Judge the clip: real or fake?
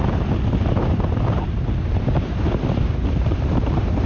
fake